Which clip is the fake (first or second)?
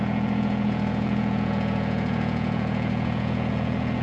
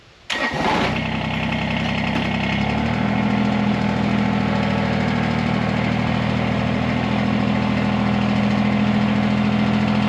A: first